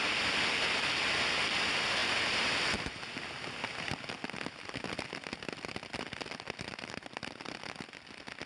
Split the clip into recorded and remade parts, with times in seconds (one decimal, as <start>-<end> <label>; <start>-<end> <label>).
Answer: 0.0-8.5 recorded